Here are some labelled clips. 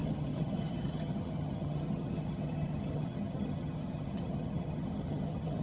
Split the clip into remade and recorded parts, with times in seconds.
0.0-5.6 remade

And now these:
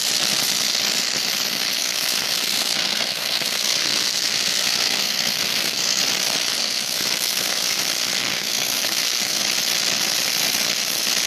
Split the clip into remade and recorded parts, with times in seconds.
0.0-1.8 recorded; 1.8-6.0 remade; 6.0-6.6 recorded; 6.6-7.8 remade; 7.8-8.3 recorded; 8.3-9.4 remade; 9.4-11.3 recorded

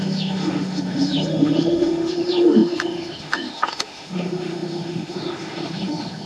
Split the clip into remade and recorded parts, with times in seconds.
0.0-6.3 remade

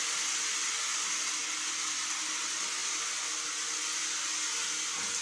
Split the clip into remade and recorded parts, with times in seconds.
0.0-5.2 recorded

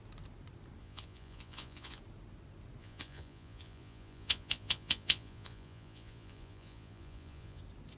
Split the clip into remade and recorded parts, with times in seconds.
0.0-0.8 recorded; 0.8-2.0 remade; 2.0-2.8 recorded; 2.8-7.6 remade; 7.6-8.0 recorded

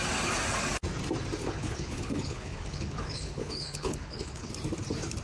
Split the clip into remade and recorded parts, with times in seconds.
0.0-1.4 recorded; 1.4-4.5 remade; 4.5-5.2 recorded

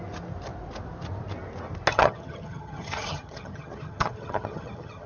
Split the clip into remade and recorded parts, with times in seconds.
0.0-1.9 recorded; 1.9-5.1 remade